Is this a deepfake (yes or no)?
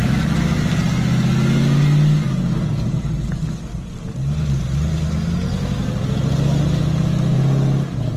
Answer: no